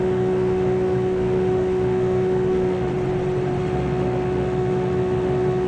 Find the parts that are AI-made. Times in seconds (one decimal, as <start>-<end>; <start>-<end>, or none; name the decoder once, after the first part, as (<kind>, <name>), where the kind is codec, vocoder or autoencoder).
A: 0.0-2.9 (autoencoder, DAC-VAE); 3.6-5.7